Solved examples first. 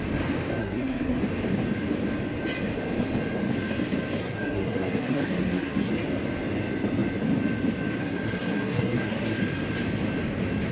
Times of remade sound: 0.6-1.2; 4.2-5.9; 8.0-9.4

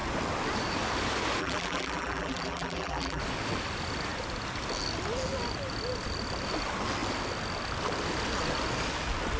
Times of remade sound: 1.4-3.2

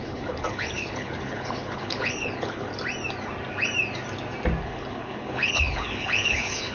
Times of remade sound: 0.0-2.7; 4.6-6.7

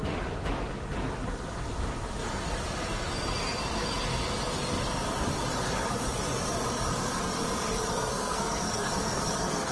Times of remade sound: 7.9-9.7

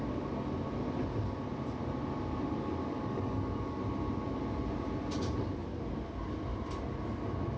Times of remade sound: 2.9-3.8